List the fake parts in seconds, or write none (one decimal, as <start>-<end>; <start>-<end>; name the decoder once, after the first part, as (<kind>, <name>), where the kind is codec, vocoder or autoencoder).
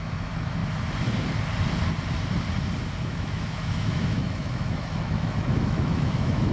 0.0-0.6 (autoencoder, DAC-VAE); 3.1-6.5